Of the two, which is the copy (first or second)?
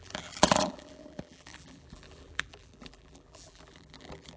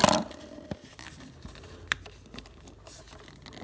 first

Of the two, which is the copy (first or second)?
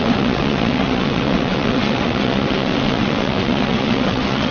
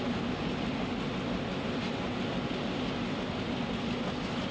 first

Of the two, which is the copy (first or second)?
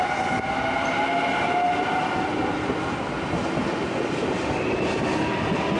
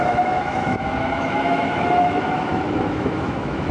second